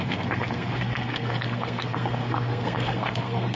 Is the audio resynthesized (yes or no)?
yes